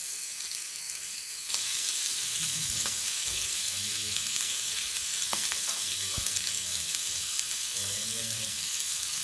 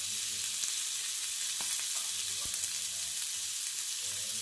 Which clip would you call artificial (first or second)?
first